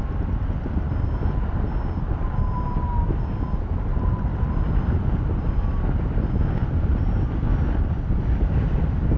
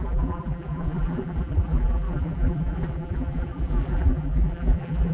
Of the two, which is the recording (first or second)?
first